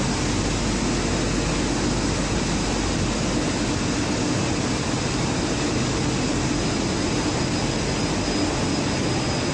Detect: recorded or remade recorded